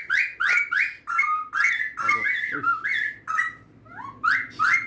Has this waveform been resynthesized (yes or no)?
no